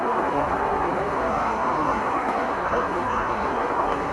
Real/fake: fake